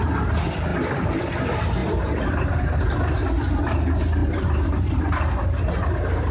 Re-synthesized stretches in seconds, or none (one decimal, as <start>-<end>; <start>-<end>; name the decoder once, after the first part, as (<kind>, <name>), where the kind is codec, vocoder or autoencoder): 1.8-3.6 (vocoder, BigVGAN v2); 4.2-6.3